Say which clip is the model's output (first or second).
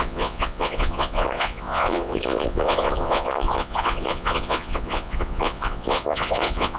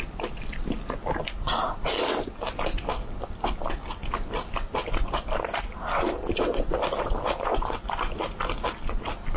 first